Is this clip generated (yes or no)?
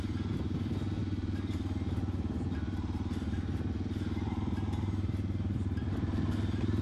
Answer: no